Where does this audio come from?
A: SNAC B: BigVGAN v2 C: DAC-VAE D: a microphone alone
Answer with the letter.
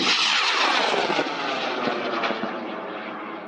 D